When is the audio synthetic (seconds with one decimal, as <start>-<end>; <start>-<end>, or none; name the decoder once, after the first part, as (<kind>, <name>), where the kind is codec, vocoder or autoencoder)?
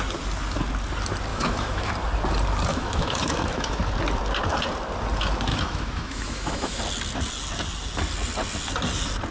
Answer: 1.3-1.9 (autoencoder, DAC-VAE); 2.7-3.8; 5.5-6.8